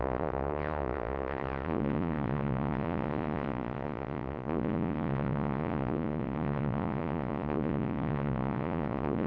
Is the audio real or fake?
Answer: fake